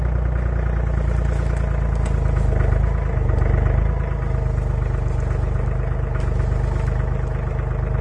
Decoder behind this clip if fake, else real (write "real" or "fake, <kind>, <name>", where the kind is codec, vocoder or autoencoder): real